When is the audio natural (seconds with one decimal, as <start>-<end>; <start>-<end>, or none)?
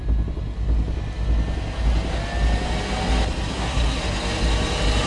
0.0-3.5; 4.0-5.1